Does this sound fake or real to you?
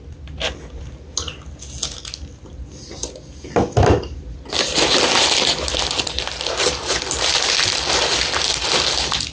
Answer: real